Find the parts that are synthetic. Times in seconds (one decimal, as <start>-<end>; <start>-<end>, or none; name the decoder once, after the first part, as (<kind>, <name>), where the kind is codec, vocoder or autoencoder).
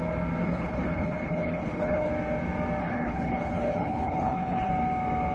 0.4-2.1 (codec, HILCodec); 2.8-4.7